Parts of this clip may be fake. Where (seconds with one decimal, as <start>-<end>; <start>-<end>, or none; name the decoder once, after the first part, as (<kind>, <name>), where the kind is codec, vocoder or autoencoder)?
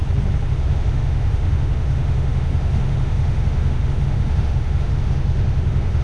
0.5-6.0 (autoencoder, DAC-VAE)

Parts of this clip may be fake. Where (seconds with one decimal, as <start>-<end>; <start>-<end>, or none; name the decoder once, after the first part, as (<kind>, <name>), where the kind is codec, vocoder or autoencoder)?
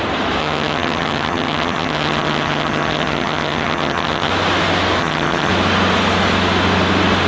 0.4-4.3 (vocoder, HiFi-GAN); 5.0-5.5